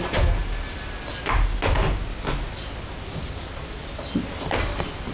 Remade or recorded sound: recorded